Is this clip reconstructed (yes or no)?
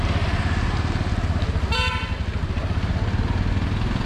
no